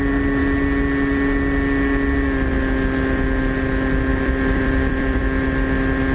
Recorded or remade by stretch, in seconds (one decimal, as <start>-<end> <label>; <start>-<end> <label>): 0.0-4.1 recorded; 4.1-5.2 remade; 5.2-6.1 recorded